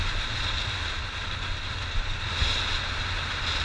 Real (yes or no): yes